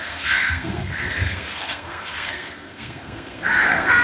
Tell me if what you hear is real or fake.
fake